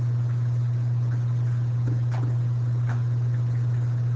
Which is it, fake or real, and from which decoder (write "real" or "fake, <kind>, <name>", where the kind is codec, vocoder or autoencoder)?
real